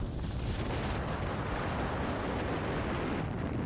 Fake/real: real